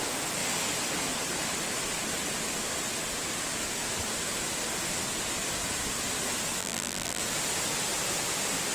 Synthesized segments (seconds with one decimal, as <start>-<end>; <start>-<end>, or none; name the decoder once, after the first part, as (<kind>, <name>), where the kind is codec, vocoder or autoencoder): 6.6-7.2 (vocoder, BigVGAN v2)